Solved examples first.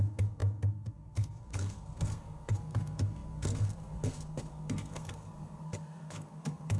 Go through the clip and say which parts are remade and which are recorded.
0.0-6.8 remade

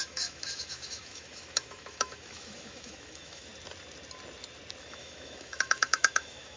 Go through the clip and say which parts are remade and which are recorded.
0.0-3.5 remade; 3.5-4.8 recorded; 4.8-6.6 remade

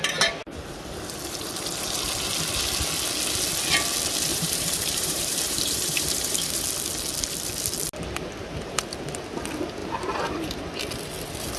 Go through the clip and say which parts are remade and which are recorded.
0.0-4.3 recorded; 4.3-6.6 remade; 6.6-9.8 recorded; 9.8-10.6 remade; 10.6-11.6 recorded